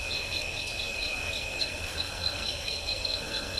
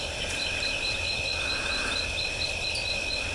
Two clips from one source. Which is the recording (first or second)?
second